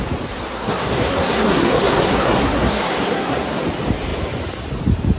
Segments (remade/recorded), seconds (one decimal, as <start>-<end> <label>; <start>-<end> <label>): 0.0-0.5 recorded; 0.5-3.6 remade; 3.6-5.2 recorded